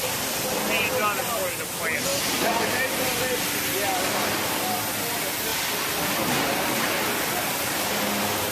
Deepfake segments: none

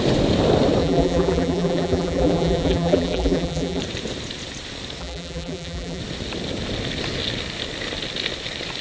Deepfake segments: 0.8-3.8; 5.0-6.0

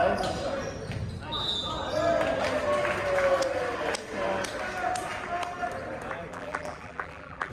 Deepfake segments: 6.3-7.5

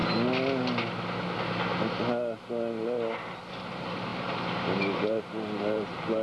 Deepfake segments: 3.5-6.2

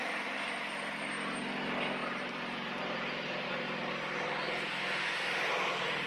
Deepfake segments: 2.0-3.5

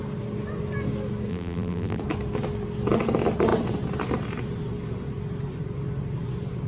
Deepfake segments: 1.3-2.0

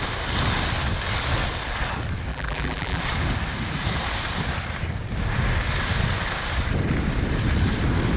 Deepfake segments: 2.3-3.0